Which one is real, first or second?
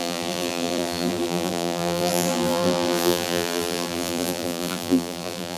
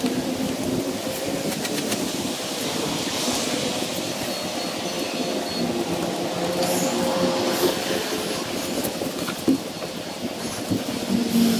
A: second